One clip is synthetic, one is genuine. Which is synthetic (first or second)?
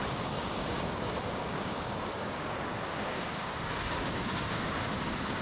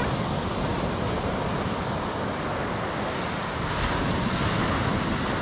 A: first